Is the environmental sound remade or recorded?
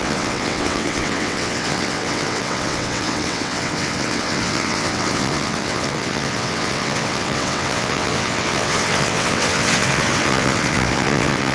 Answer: remade